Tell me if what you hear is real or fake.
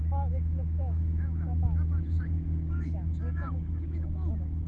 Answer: fake